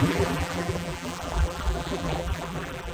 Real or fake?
fake